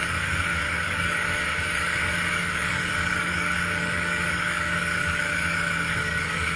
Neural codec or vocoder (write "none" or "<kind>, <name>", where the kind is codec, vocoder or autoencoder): codec, DAC